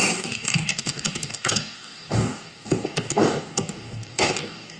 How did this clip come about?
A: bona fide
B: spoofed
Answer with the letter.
B